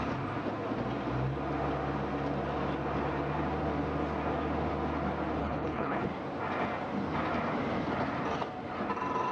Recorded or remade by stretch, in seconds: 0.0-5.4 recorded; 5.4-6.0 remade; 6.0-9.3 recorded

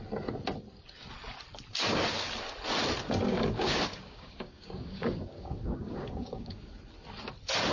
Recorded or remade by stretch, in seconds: 0.0-3.3 recorded; 3.3-6.7 remade; 6.7-7.7 recorded

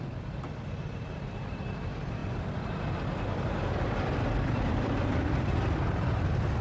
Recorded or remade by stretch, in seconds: 0.0-6.6 remade

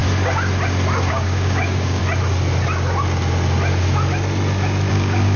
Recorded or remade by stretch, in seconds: 0.0-1.1 recorded; 1.1-2.0 remade; 2.0-4.9 recorded; 4.9-5.4 remade

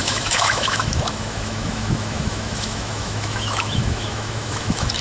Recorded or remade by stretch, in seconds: 0.0-5.0 remade

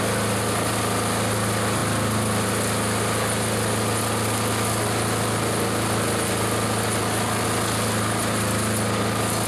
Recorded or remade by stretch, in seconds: 0.0-9.5 recorded